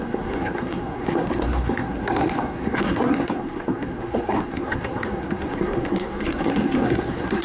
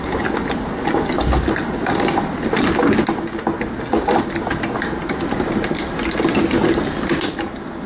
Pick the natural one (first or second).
second